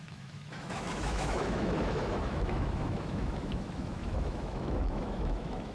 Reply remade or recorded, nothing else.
remade